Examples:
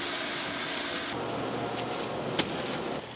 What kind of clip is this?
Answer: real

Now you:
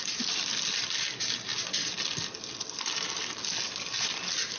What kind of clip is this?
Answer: real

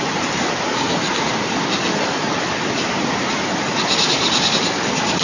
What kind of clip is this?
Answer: real